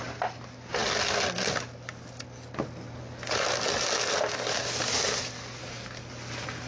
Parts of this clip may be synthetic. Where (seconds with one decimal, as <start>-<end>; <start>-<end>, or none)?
none